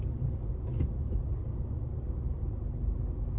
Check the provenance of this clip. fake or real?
real